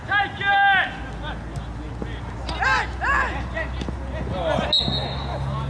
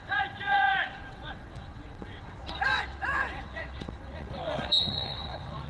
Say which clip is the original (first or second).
first